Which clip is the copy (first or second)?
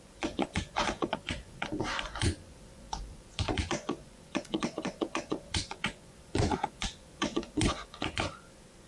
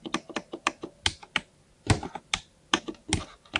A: first